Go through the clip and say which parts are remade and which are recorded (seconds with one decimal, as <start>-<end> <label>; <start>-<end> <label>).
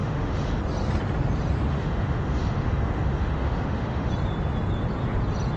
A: 0.0-0.6 remade; 0.6-1.7 recorded; 1.7-4.1 remade; 4.1-5.6 recorded